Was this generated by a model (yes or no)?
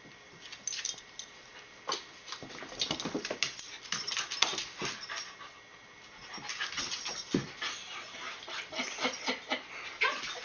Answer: no